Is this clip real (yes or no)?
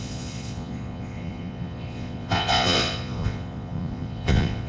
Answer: no